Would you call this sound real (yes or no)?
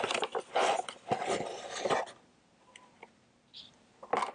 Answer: yes